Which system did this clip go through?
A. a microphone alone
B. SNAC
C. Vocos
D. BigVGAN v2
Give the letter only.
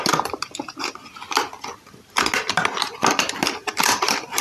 A